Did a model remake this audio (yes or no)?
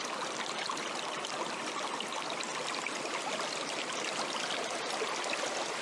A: no